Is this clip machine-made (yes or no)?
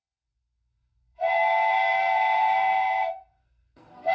yes